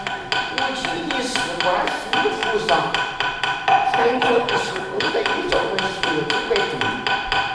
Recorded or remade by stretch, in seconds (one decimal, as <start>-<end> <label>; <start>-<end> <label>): 0.0-4.0 recorded; 4.0-5.1 remade; 5.1-7.5 recorded